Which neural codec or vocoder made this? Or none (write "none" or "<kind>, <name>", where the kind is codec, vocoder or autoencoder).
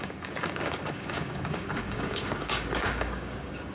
codec, DAC